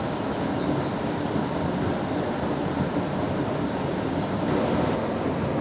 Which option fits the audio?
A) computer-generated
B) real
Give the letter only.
B